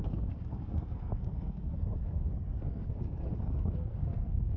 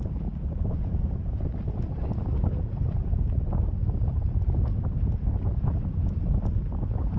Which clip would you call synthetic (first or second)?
first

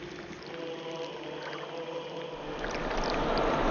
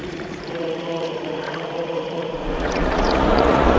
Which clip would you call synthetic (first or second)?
second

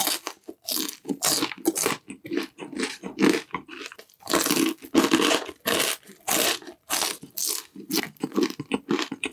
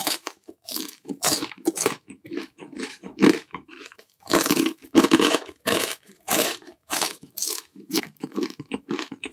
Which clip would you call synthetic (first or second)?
second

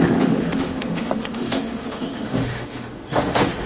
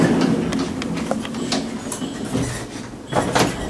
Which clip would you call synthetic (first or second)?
first